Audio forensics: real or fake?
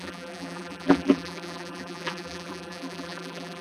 fake